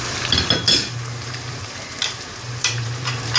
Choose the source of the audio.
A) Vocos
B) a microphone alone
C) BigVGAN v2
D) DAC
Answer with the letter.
C